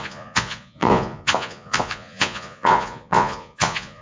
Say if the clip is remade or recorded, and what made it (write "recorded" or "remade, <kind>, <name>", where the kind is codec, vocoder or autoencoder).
remade, vocoder, Vocos